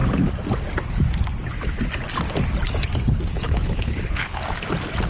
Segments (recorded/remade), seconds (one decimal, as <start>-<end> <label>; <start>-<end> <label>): 0.0-3.3 recorded; 3.3-4.4 remade; 4.4-5.1 recorded